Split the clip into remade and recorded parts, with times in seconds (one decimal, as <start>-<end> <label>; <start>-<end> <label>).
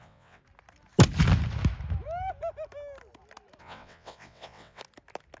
0.0-0.4 remade; 0.4-3.6 recorded; 3.6-4.8 remade; 4.8-5.4 recorded